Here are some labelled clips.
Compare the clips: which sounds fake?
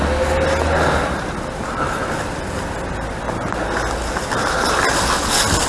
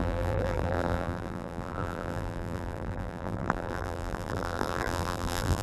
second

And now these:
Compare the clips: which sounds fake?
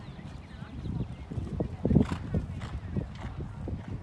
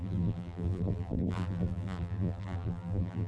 second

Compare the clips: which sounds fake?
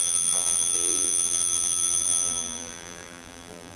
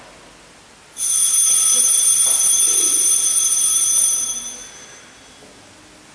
first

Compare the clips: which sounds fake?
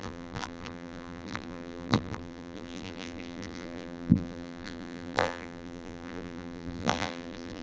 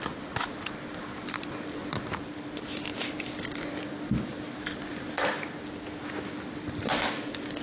first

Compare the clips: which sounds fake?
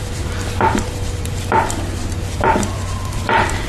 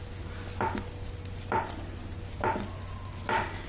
first